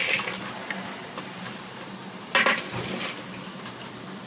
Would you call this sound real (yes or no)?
yes